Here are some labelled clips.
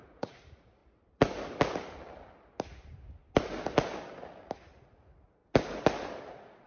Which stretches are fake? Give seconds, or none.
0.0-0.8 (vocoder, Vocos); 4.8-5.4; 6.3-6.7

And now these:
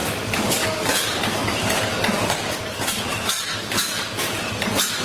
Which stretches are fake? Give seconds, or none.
0.0-5.0 (codec, DAC)

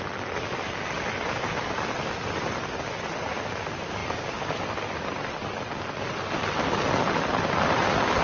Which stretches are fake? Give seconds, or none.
none

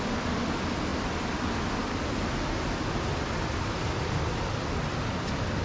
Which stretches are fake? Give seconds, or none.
none

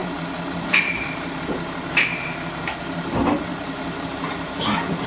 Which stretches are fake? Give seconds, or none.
0.0-3.1 (vocoder, BigVGAN v2); 3.5-4.6